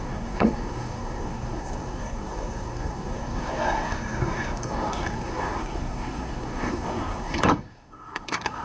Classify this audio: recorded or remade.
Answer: remade